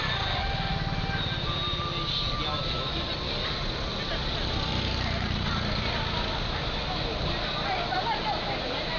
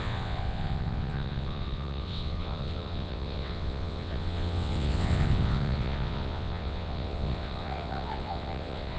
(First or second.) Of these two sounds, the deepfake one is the second